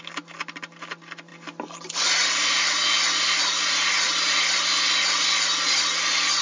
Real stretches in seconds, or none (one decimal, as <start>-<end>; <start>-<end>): 0.0-6.4